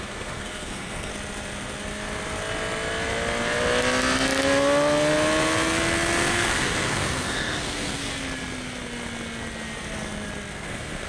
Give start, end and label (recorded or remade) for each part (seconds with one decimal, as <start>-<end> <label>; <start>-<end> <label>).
0.0-1.1 remade; 1.1-6.3 recorded; 6.3-8.1 remade; 8.1-10.5 recorded; 10.5-11.1 remade